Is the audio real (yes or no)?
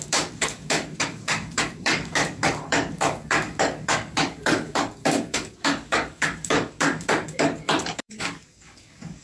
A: no